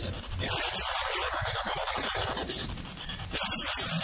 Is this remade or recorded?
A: remade